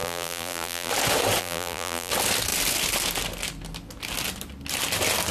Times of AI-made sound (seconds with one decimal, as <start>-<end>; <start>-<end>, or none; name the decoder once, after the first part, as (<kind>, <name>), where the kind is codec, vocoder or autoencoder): 0.0-0.9 (vocoder, BigVGAN v2); 1.4-2.1